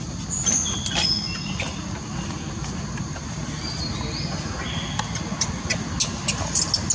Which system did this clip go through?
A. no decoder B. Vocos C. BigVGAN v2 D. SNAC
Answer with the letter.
A